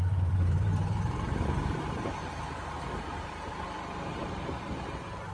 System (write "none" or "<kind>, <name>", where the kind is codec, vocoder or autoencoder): vocoder, BigVGAN v2